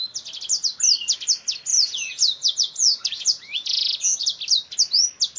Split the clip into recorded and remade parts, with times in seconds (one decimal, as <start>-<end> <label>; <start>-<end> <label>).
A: 0.0-1.7 recorded; 1.7-4.0 remade; 4.0-5.4 recorded